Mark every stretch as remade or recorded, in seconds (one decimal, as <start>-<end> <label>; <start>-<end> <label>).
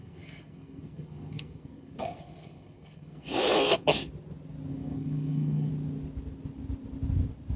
0.0-4.1 remade; 4.1-4.7 recorded; 4.7-5.7 remade; 5.7-7.6 recorded